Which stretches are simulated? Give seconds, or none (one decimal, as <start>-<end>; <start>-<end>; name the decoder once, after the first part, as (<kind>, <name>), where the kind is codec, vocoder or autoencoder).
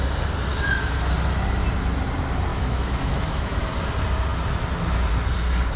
2.5-3.6 (autoencoder, DAC-VAE)